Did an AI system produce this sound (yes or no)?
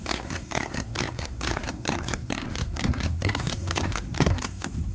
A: yes